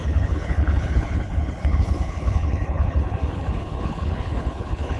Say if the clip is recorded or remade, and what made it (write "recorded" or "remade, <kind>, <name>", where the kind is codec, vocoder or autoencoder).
remade, codec, HILCodec